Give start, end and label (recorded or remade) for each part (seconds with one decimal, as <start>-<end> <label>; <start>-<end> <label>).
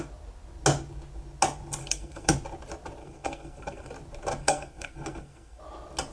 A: 0.0-1.8 recorded; 1.8-2.3 remade; 2.3-3.0 recorded; 3.0-3.9 remade; 3.9-4.4 recorded; 4.4-5.6 remade; 5.6-6.1 recorded